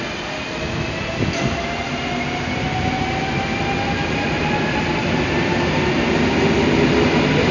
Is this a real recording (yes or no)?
yes